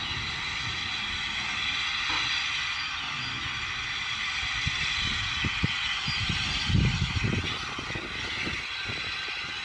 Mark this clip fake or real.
real